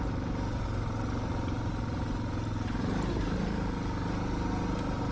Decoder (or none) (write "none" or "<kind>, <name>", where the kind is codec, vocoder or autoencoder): none